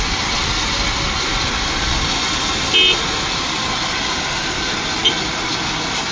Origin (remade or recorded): recorded